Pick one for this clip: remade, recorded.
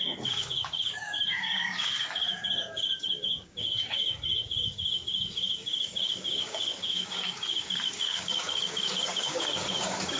remade